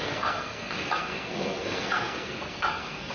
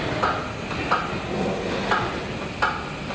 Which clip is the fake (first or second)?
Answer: first